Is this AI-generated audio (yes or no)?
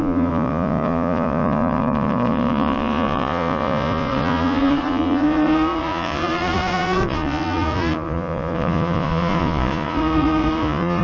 yes